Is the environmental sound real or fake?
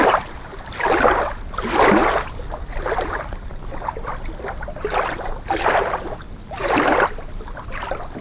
real